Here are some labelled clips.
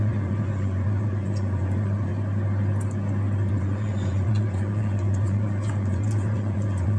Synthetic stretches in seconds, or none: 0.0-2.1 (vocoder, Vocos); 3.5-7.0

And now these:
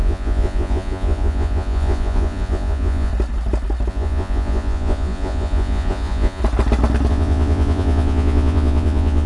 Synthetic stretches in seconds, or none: 0.0-3.1 (vocoder, Vocos); 3.9-6.4; 7.1-9.3

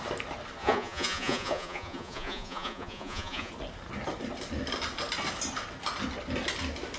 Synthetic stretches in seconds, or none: 0.6-3.5 (vocoder, Vocos)

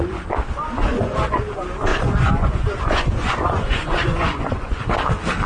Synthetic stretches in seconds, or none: 0.9-1.4 (vocoder, Vocos); 1.9-4.8